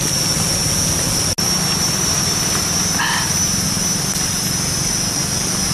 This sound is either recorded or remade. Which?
recorded